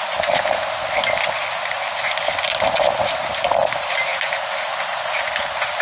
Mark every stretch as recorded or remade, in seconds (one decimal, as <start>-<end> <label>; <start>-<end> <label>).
0.0-5.8 recorded